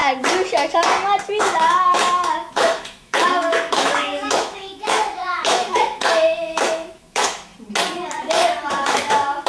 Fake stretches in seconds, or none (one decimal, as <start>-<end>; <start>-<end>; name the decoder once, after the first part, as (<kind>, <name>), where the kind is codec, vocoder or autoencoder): 1.4-7.5 (autoencoder, DAC-VAE); 8.2-9.5

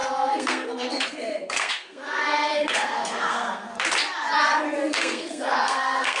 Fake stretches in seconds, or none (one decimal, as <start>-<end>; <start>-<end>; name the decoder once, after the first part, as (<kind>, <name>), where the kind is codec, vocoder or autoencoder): 0.0-3.7 (codec, SNAC); 4.8-6.2